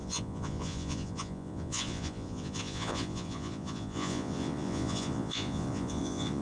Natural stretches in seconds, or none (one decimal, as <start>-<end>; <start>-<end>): none